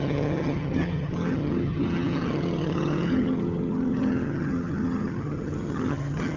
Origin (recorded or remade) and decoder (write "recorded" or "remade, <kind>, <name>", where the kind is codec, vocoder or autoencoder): remade, vocoder, HiFi-GAN